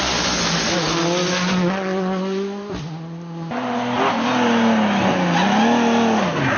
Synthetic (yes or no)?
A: no